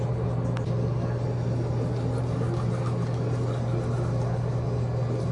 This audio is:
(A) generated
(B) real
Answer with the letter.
B